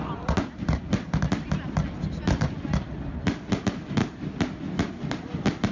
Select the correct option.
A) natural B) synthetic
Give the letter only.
A